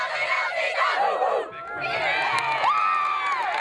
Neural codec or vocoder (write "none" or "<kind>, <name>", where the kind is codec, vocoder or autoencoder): none